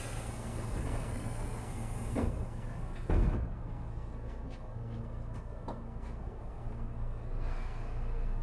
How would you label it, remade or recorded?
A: remade